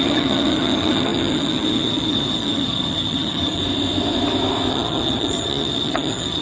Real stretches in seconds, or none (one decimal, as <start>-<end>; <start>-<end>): 3.6-4.7